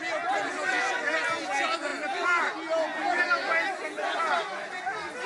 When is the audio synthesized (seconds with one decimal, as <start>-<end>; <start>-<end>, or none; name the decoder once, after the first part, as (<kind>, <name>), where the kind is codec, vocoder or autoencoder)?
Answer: none